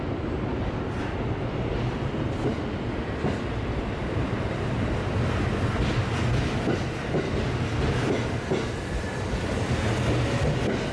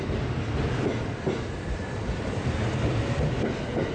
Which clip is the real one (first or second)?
first